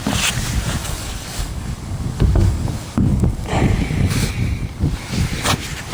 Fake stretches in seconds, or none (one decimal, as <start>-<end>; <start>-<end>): 0.8-4.3